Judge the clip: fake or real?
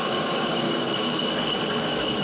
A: fake